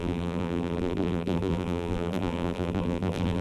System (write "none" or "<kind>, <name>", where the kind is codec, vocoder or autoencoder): vocoder, BigVGAN v2